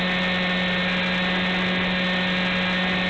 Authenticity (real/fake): real